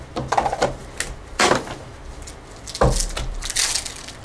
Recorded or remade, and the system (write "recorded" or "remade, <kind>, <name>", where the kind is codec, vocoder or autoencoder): recorded